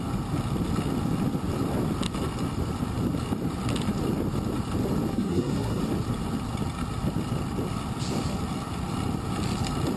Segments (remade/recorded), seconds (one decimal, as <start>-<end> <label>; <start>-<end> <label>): 0.0-5.1 recorded; 5.1-5.8 remade; 5.8-10.0 recorded